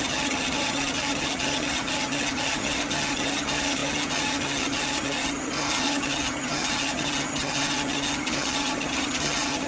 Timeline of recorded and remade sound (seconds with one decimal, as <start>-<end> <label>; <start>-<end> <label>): 0.0-9.7 remade